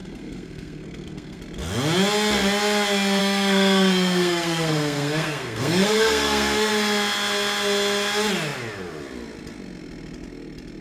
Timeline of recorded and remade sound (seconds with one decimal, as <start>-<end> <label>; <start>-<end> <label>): 0.0-1.4 remade; 1.4-3.2 recorded; 3.2-6.7 remade; 6.7-10.8 recorded